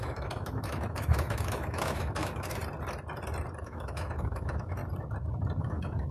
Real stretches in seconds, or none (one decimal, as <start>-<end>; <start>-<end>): 2.6-3.6; 4.8-5.6